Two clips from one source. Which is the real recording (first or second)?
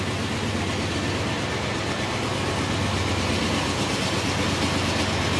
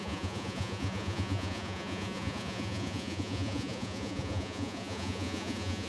first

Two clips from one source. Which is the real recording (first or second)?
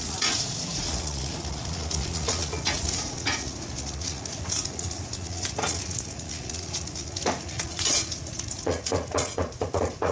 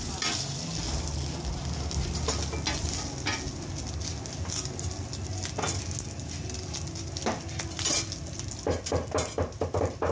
second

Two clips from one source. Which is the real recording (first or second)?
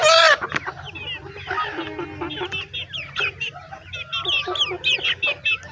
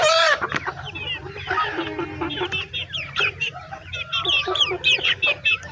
first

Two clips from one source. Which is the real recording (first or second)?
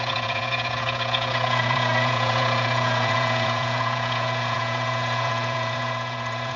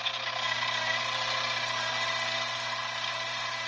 second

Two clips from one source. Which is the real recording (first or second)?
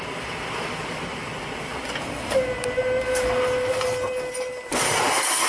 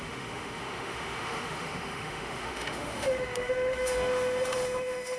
first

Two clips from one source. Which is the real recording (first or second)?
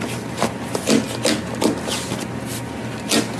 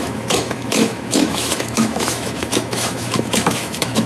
first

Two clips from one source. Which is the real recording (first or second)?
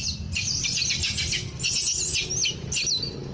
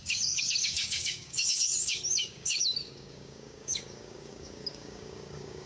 first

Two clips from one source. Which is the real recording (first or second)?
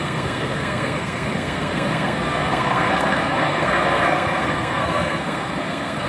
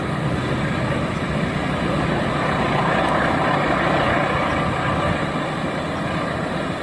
second